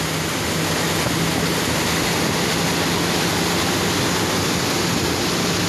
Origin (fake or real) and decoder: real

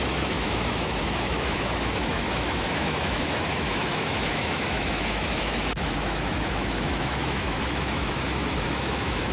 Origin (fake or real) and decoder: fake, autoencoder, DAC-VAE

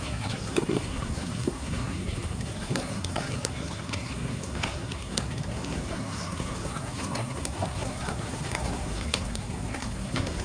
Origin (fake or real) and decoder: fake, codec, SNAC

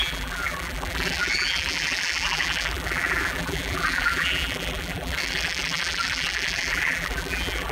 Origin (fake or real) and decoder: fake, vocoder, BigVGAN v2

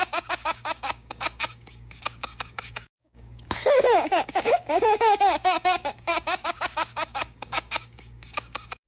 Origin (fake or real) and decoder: fake, codec, DAC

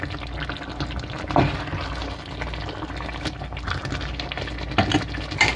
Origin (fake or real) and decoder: real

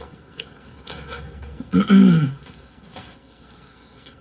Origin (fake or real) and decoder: fake, codec, SNAC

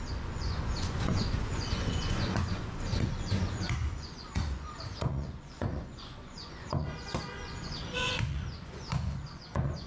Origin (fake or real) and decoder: fake, vocoder, Vocos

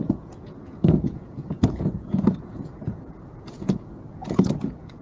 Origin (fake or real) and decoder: fake, vocoder, Vocos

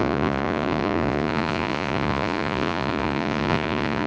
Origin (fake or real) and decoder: fake, vocoder, Vocos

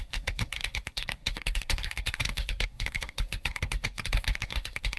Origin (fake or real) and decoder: fake, codec, SNAC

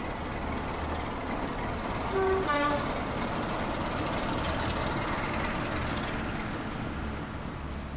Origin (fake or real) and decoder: real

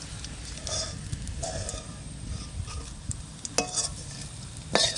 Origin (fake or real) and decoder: real